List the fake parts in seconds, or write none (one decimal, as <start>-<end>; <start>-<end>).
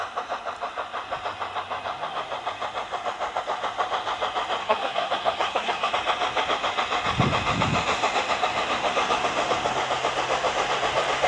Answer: 4.6-5.9